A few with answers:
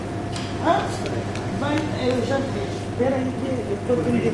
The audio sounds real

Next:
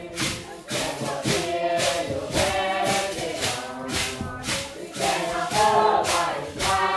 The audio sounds real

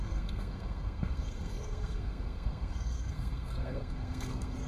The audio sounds fake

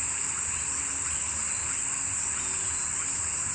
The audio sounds real